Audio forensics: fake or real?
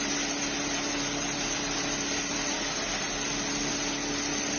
real